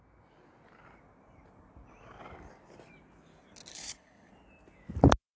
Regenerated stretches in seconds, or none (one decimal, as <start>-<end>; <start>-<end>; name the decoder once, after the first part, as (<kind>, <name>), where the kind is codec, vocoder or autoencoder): 3.7-4.3 (codec, HILCodec)

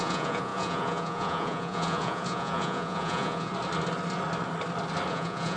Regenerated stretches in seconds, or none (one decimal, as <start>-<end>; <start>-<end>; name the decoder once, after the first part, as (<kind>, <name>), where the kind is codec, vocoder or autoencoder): 0.0-3.5 (vocoder, Vocos); 5.1-5.6

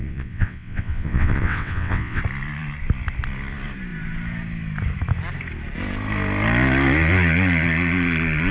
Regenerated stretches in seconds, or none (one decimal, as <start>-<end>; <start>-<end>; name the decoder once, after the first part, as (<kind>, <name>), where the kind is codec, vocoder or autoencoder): 0.0-2.2 (vocoder, WaveNeXt)

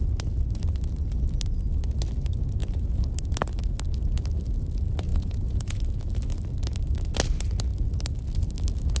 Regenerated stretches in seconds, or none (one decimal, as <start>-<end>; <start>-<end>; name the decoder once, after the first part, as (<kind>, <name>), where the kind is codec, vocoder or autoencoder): 5.1-5.8 (vocoder, Vocos)

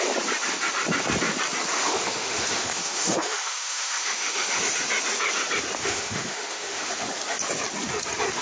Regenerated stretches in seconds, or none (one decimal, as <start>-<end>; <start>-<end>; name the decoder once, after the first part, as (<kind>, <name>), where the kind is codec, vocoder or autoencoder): 1.7-4.6 (autoencoder, DAC-VAE); 5.8-6.9

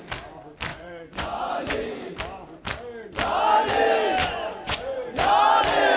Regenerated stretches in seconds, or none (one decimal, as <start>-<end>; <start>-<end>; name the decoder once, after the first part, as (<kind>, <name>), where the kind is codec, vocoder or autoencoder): 0.7-2.2 (vocoder, Vocos); 4.2-5.3